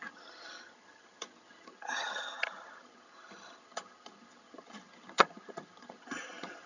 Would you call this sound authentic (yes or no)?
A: no